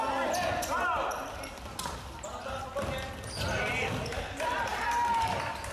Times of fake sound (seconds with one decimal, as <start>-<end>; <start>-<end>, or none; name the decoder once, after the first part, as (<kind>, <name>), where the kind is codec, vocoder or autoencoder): none